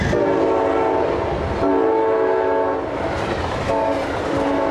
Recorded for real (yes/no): yes